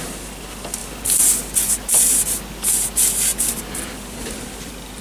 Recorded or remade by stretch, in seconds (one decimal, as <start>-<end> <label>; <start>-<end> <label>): 0.0-3.3 recorded; 3.3-5.0 remade